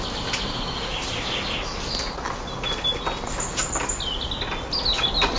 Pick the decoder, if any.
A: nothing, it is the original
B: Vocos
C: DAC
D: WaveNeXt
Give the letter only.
A